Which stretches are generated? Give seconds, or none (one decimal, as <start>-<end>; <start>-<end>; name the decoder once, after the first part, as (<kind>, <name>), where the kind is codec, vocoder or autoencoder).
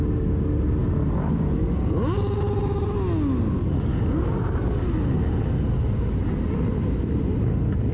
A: none